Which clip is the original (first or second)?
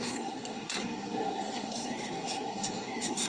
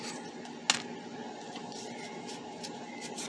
second